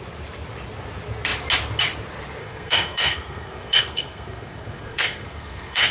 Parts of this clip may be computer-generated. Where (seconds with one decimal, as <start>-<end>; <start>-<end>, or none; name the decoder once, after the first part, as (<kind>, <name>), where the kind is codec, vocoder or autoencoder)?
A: 2.4-5.9 (codec, SNAC)